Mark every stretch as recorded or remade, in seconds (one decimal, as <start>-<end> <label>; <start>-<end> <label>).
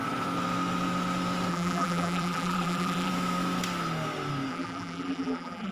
0.0-1.5 recorded; 1.5-3.1 remade; 3.1-4.5 recorded; 4.5-5.7 remade